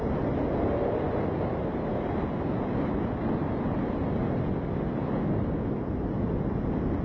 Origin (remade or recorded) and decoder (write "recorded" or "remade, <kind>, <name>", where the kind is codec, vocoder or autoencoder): recorded